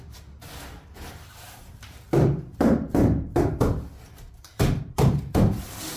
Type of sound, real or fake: fake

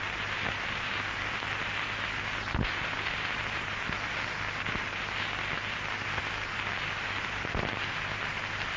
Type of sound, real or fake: real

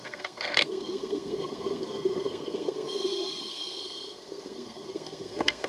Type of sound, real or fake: fake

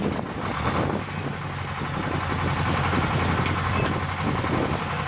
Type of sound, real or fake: real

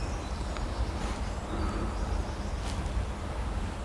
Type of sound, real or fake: real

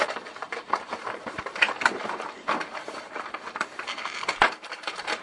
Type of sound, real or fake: fake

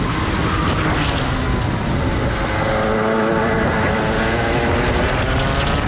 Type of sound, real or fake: real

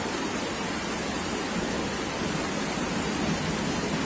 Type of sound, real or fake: real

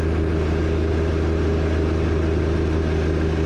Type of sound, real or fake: real